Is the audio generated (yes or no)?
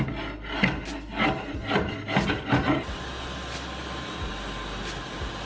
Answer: no